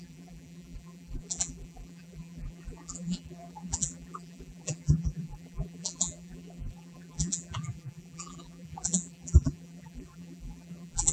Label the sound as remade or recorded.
remade